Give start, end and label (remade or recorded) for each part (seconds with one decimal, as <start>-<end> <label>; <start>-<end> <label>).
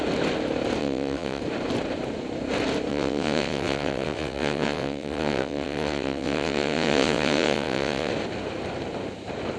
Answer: 0.0-0.8 recorded; 0.8-1.4 remade; 1.4-2.9 recorded; 2.9-8.1 remade; 8.1-9.6 recorded